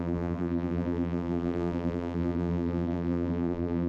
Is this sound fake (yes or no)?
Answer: yes